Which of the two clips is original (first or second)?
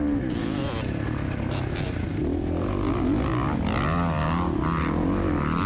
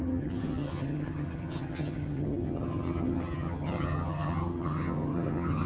first